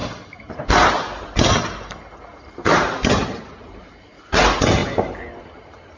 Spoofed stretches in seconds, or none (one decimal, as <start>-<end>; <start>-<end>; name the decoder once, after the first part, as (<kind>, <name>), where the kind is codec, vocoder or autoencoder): 2.3-3.9 (vocoder, BigVGAN v2); 4.8-6.0